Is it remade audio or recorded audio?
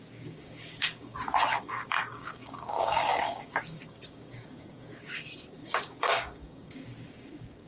remade